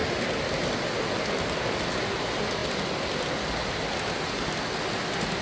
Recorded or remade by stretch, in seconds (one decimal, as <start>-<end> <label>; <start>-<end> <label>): 0.0-5.4 recorded